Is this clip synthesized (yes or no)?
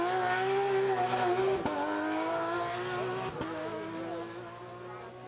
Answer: no